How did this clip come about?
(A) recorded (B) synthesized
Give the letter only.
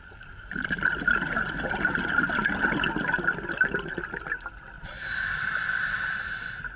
A